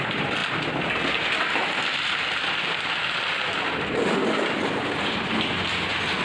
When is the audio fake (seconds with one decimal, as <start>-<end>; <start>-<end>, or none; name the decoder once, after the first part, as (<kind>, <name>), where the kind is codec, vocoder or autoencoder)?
none